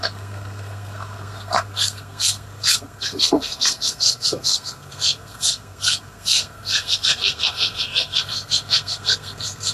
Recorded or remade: remade